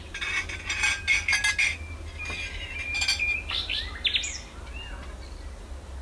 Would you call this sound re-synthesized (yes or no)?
no